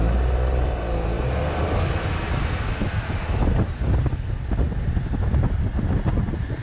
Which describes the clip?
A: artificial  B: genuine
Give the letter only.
B